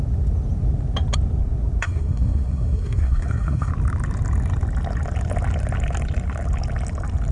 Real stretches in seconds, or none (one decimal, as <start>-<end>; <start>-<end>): 0.0-1.8; 3.7-7.3